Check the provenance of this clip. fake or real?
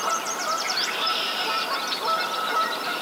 fake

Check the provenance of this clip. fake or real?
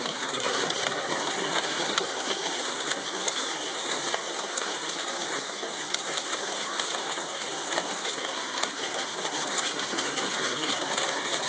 fake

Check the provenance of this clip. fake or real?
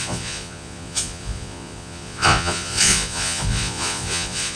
fake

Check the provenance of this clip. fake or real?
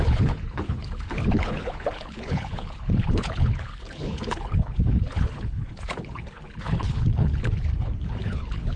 fake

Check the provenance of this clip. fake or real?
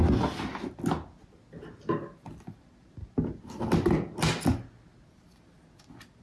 real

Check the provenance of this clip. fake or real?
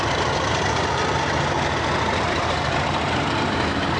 real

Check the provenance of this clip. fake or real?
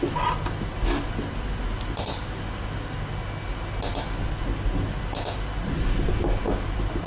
real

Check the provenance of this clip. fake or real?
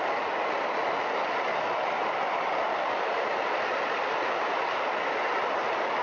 fake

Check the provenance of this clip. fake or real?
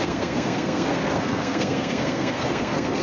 fake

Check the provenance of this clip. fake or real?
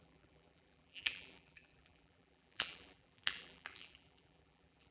fake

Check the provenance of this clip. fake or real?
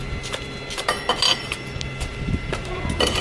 real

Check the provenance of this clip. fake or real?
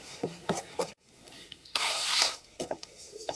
fake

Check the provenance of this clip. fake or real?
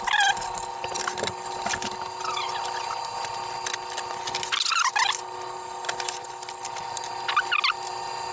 real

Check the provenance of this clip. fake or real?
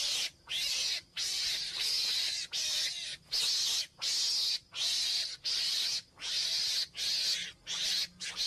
real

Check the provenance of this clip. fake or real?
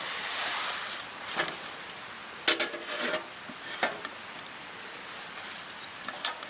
real